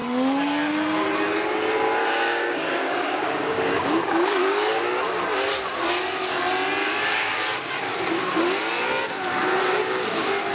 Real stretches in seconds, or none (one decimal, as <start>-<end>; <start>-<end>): 0.0-2.0; 4.8-6.8; 7.4-10.5